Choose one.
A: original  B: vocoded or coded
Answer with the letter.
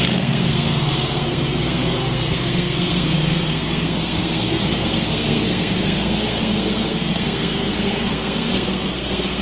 B